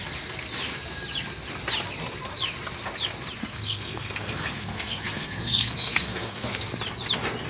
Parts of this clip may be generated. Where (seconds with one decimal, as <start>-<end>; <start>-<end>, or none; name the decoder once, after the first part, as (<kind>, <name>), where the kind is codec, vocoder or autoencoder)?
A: 3.4-6.7 (codec, SNAC)